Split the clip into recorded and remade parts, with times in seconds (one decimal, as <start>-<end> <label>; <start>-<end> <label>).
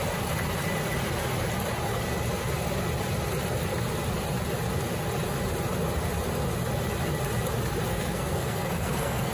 0.0-7.9 recorded; 7.9-9.3 remade